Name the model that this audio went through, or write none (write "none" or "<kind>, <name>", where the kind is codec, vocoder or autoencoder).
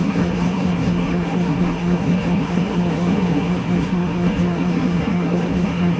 codec, SNAC